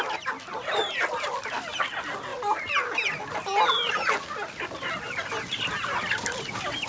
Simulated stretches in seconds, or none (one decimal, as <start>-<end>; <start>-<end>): none